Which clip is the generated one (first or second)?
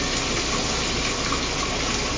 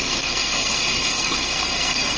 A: second